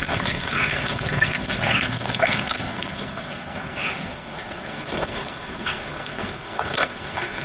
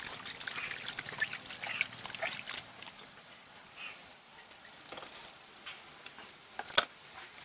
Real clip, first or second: second